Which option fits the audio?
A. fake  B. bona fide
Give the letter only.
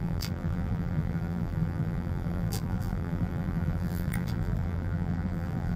A